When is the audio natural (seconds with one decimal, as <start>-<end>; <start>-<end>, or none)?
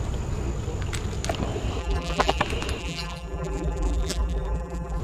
0.0-1.8; 2.4-2.8